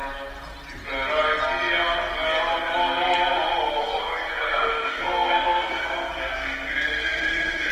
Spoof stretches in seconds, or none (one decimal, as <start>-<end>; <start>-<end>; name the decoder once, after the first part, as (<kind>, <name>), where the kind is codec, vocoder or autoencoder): 3.7-7.7 (codec, SNAC)